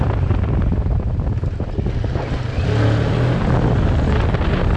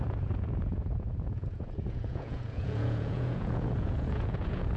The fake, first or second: second